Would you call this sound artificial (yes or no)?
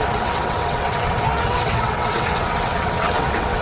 yes